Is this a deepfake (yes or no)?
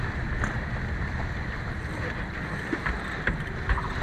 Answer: no